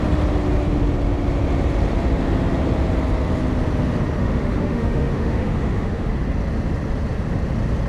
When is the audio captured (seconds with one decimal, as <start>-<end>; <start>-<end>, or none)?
0.0-4.2; 6.1-7.9